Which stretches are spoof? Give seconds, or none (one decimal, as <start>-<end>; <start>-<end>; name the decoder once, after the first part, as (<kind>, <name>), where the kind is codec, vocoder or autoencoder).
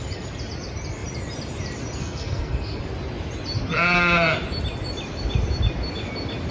2.0-2.8 (codec, SNAC)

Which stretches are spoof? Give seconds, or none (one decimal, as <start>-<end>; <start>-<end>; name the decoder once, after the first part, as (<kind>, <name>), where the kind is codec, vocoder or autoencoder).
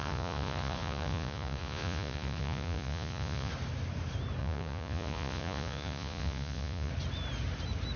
0.0-3.5 (vocoder, Vocos); 4.4-6.9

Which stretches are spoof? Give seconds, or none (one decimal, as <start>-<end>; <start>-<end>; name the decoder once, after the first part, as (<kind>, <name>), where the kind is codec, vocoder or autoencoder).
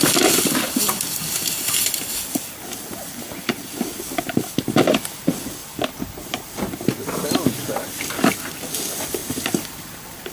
none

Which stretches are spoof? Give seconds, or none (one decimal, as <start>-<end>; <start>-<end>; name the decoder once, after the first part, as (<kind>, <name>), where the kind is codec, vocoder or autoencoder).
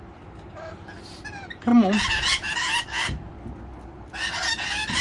none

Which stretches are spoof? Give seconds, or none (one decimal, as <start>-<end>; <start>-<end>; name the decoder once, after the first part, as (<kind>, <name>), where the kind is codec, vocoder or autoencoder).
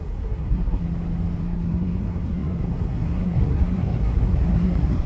0.0-0.8 (codec, SNAC); 1.4-5.1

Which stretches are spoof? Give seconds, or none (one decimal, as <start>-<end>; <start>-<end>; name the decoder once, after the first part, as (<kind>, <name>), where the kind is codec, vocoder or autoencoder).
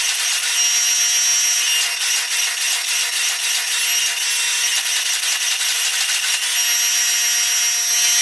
none